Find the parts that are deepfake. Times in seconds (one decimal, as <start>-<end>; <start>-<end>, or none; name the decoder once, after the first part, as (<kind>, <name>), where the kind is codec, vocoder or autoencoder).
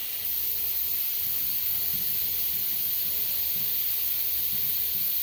none